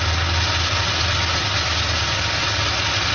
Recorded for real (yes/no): yes